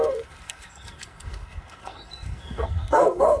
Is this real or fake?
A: fake